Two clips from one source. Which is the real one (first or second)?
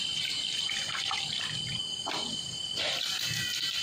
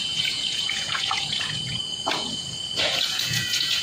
first